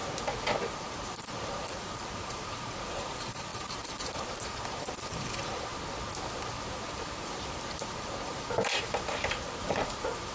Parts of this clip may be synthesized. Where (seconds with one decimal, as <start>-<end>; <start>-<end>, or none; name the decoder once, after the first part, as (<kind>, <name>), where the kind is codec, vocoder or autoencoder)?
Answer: 0.6-5.7 (vocoder, BigVGAN v2); 6.9-10.3